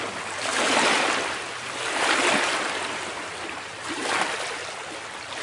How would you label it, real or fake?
real